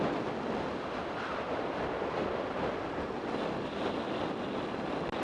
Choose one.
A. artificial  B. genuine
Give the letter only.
B